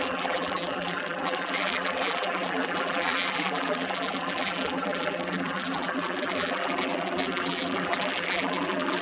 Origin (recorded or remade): remade